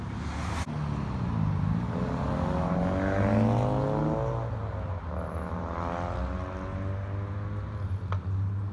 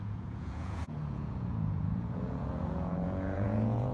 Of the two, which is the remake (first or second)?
second